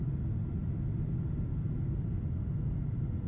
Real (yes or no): yes